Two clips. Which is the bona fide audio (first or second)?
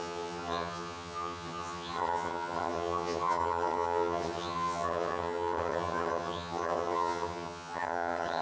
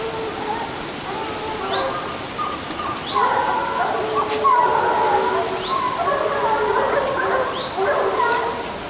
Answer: second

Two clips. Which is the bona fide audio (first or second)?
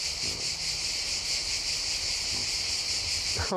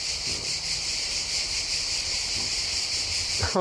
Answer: first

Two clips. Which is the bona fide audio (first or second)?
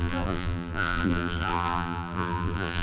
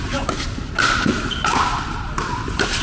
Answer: second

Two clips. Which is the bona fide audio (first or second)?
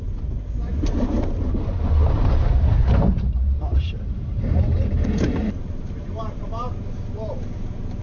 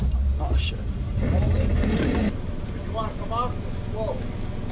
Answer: second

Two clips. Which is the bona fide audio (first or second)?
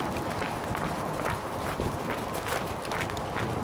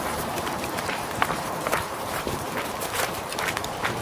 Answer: first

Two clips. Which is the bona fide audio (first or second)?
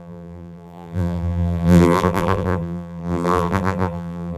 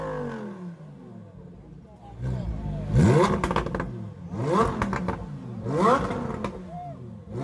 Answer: second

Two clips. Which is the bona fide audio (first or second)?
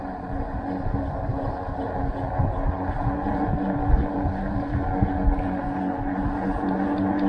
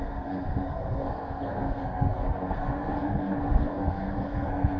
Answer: first